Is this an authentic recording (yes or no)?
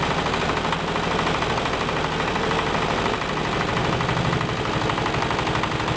yes